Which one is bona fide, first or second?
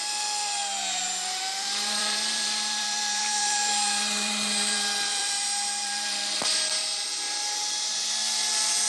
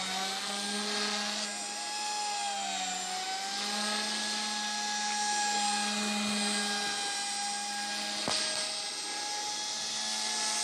second